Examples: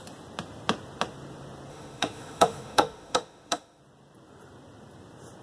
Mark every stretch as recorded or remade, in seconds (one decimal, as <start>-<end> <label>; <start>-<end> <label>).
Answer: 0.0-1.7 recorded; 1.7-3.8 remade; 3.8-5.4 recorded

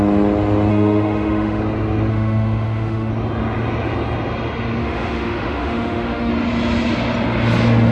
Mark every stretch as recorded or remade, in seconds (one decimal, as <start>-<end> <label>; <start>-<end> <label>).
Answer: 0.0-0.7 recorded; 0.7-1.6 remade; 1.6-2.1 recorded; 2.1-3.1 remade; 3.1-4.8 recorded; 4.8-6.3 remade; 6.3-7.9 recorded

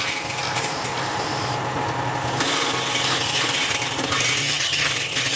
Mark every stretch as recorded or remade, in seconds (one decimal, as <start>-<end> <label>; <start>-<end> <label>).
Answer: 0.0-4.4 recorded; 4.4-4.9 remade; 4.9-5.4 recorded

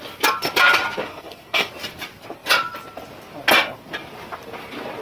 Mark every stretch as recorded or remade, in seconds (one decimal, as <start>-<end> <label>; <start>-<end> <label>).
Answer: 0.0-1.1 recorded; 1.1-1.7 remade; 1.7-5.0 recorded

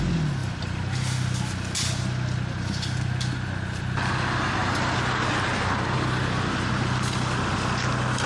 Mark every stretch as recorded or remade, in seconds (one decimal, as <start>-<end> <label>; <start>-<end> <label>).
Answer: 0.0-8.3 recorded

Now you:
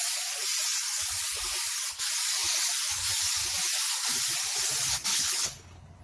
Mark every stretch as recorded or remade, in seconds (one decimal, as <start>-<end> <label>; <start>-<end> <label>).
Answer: 0.0-5.1 recorded; 5.1-6.0 remade

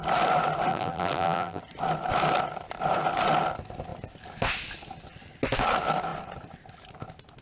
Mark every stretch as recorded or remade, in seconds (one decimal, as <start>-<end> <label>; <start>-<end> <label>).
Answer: 0.0-0.7 recorded; 0.7-1.6 remade; 1.6-7.4 recorded